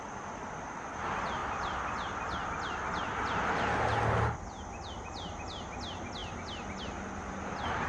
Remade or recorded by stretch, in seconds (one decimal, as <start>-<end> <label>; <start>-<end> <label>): 0.0-7.9 recorded